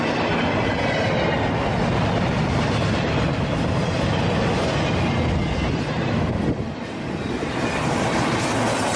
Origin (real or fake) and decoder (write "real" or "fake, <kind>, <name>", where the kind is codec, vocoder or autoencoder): real